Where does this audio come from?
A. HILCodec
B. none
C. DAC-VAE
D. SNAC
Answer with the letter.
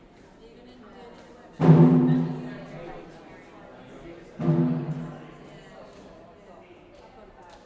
B